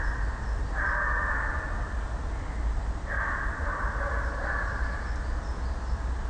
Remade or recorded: recorded